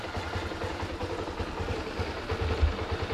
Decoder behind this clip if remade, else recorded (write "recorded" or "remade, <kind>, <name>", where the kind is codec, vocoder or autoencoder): recorded